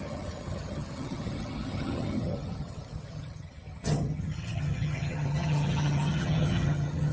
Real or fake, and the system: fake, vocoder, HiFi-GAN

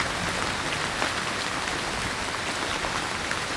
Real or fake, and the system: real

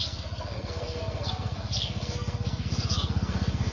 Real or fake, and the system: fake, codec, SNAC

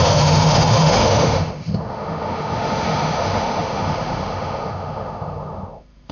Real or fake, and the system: fake, autoencoder, DAC-VAE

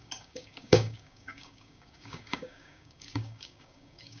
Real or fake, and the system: fake, codec, DAC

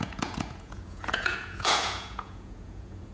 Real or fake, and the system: fake, vocoder, Vocos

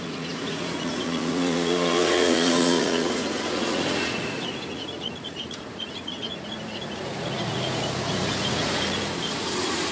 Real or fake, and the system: fake, vocoder, Vocos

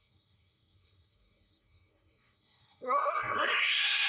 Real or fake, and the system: fake, codec, SNAC